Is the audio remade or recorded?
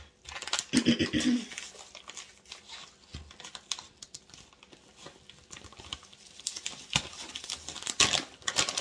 recorded